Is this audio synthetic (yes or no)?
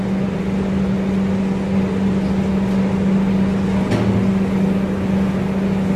no